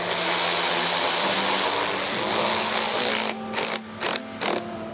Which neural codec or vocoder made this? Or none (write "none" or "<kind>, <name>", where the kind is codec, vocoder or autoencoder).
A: none